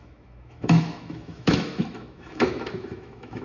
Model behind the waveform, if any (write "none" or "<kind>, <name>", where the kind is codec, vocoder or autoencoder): autoencoder, DAC-VAE